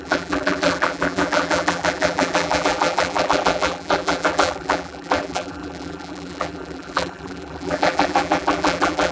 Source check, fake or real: fake